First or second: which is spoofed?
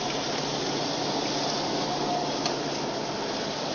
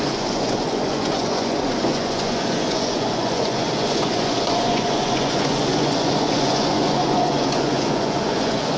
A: second